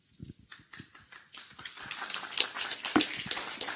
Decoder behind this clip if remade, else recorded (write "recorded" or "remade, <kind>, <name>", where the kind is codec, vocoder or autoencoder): recorded